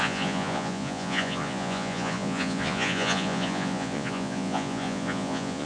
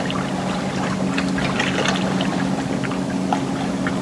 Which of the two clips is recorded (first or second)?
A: second